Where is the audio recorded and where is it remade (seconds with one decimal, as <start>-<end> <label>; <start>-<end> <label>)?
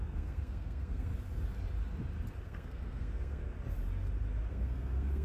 0.0-1.1 remade; 1.1-2.4 recorded; 2.4-3.4 remade; 3.4-4.5 recorded; 4.5-5.2 remade